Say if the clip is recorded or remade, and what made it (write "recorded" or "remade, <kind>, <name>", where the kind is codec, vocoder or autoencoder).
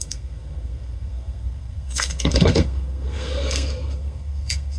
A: remade, codec, SNAC